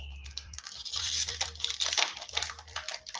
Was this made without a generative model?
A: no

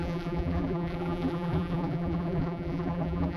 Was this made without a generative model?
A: no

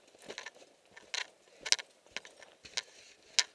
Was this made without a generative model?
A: yes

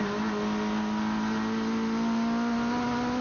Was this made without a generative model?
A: yes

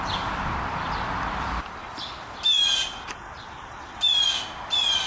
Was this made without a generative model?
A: no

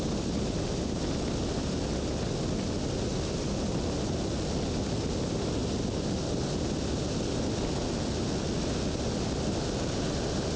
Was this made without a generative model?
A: yes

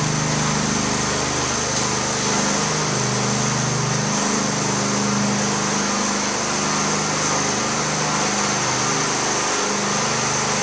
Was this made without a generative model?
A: yes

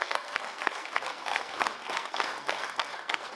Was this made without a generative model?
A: no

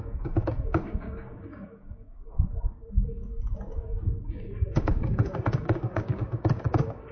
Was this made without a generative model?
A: no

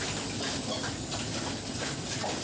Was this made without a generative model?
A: no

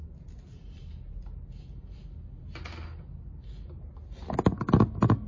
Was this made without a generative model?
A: yes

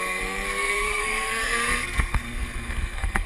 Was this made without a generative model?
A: no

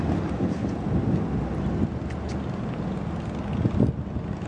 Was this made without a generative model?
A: yes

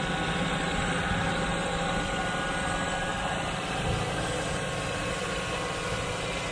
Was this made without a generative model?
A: yes